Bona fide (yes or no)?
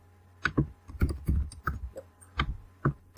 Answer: yes